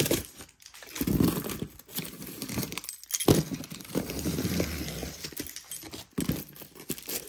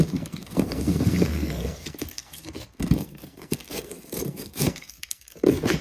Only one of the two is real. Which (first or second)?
first